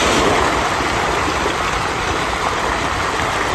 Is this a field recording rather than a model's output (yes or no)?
yes